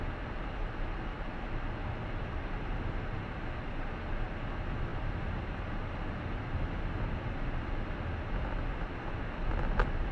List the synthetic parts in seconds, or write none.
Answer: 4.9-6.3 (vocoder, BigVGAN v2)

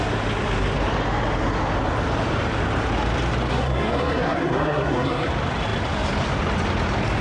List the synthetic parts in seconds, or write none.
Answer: 3.5-5.3 (codec, SNAC)

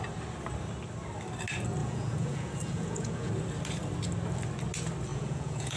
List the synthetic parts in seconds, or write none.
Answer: 1.8-3.3 (vocoder, Vocos); 5.1-5.8

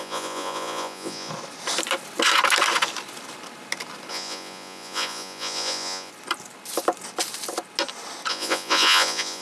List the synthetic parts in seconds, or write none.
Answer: 0.0-1.3 (vocoder, Vocos); 4.1-6.1; 8.3-9.4